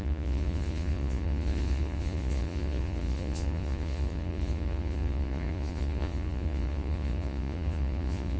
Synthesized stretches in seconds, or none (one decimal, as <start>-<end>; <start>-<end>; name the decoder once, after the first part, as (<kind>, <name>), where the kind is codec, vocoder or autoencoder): 0.0-8.4 (vocoder, Vocos)